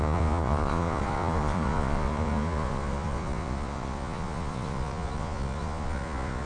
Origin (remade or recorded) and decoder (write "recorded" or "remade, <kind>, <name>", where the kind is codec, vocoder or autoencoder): remade, vocoder, Vocos